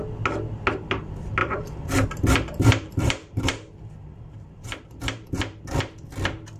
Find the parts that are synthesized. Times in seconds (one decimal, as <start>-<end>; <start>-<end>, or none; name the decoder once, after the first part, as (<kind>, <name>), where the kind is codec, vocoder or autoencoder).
1.4-5.4 (vocoder, BigVGAN v2)